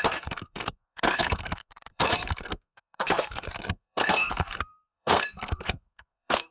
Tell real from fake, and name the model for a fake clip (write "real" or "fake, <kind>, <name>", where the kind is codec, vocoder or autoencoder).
fake, codec, SNAC